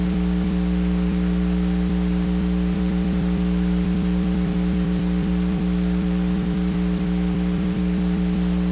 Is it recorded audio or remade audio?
remade